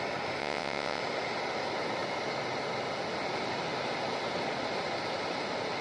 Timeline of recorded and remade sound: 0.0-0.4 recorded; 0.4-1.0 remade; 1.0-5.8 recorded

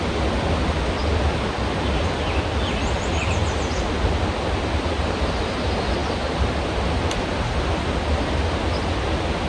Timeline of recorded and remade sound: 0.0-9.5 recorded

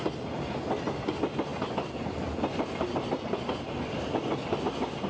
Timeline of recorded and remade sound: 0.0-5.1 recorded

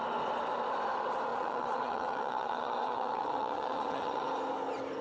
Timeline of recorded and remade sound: 0.0-1.3 recorded; 1.3-4.3 remade; 4.3-5.0 recorded

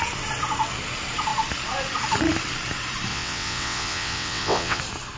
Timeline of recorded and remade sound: 0.0-3.1 recorded; 3.1-4.8 remade; 4.8-5.2 recorded

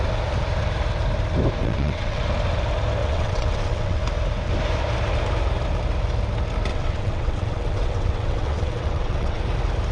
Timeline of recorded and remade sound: 0.0-1.6 recorded; 1.6-2.2 remade; 2.2-3.0 recorded; 3.0-4.0 remade; 4.0-6.7 recorded; 6.7-9.4 remade; 9.4-9.9 recorded

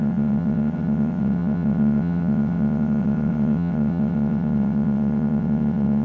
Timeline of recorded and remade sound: 0.0-6.0 remade

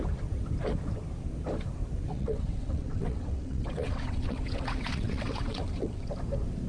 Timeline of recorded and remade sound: 0.0-2.1 recorded; 2.1-6.1 remade; 6.1-6.7 recorded